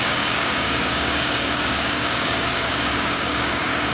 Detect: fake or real fake